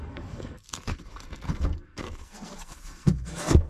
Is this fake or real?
fake